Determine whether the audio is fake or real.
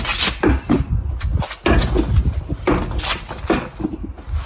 real